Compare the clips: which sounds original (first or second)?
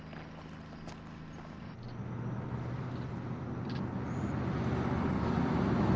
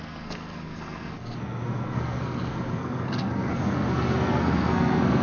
first